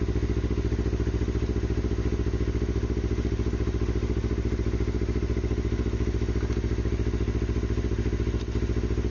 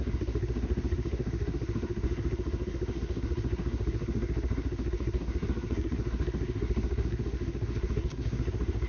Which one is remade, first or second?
second